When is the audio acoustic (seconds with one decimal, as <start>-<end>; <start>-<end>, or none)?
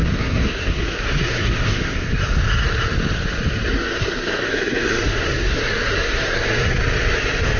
2.2-3.7; 6.8-7.6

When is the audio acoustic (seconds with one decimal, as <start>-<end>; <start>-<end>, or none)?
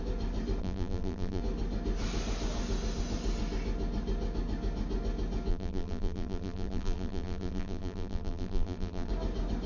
0.0-0.6; 1.4-5.5; 9.1-9.7